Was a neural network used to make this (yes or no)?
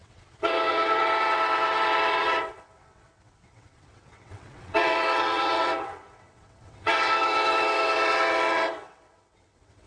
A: yes